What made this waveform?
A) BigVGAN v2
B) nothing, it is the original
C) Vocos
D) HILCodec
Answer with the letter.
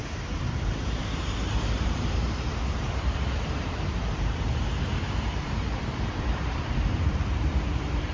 A